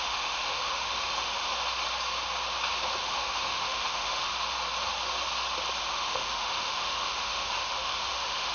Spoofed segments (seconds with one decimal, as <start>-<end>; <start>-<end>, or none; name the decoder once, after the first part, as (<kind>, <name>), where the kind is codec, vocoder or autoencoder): 0.0-1.5 (autoencoder, DAC-VAE); 3.0-4.3; 5.8-8.5